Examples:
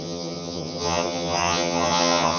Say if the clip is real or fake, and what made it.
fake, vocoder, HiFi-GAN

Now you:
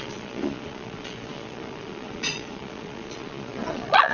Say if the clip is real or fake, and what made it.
fake, vocoder, Vocos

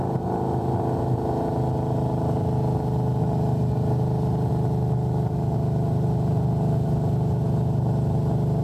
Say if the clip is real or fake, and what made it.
real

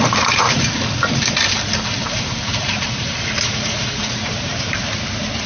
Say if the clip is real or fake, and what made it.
fake, vocoder, BigVGAN v2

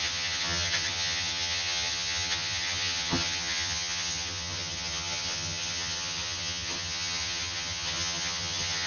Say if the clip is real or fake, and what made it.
fake, vocoder, HiFi-GAN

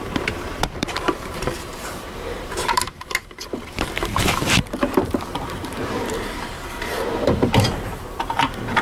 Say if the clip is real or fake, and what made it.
fake, vocoder, BigVGAN v2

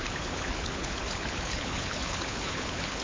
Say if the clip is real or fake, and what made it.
fake, codec, HILCodec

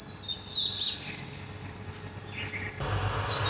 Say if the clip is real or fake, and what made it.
real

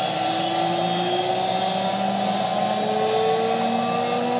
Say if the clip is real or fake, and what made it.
real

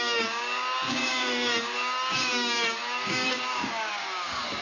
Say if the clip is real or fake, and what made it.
fake, codec, DAC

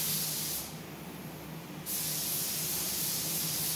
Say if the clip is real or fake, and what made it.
real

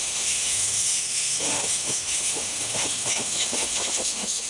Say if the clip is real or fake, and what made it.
fake, autoencoder, DAC-VAE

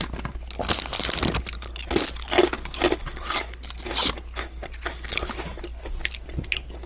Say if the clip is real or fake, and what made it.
real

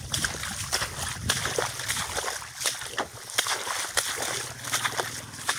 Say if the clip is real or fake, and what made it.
real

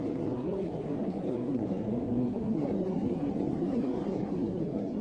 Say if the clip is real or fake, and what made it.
fake, codec, SNAC